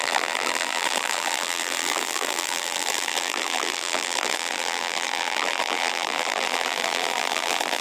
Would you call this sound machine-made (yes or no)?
yes